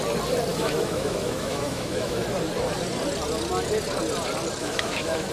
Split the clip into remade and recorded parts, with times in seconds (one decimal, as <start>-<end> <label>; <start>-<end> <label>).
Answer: 0.0-0.5 recorded; 0.5-2.2 remade; 2.2-4.6 recorded; 4.6-5.3 remade